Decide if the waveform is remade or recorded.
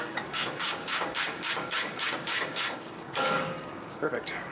remade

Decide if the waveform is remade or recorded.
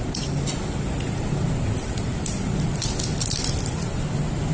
recorded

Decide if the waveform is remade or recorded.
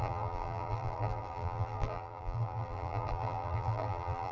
remade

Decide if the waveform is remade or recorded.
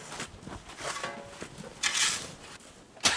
recorded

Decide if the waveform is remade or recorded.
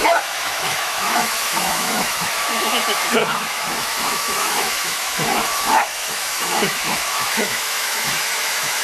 remade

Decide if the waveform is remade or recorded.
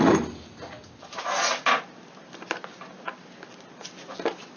recorded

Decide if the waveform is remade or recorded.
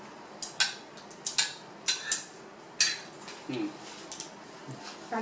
recorded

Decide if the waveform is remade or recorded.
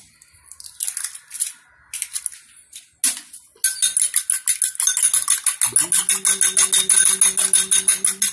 recorded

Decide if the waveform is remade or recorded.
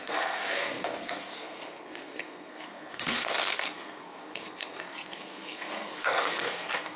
remade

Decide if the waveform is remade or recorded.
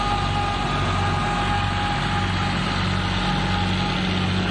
recorded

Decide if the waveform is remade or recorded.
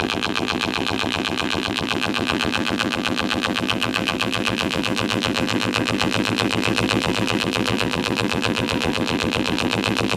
remade